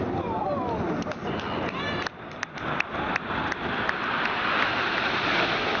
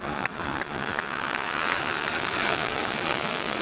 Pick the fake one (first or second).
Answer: second